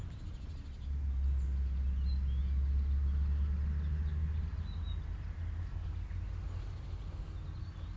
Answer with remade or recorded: recorded